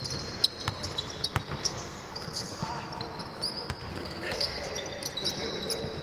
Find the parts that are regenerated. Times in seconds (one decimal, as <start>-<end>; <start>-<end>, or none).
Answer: 1.6-2.7; 3.9-4.7